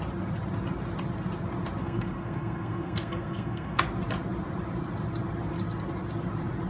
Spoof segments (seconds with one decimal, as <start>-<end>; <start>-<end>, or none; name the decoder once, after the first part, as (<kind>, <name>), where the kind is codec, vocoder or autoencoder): 1.8-3.8 (codec, SNAC)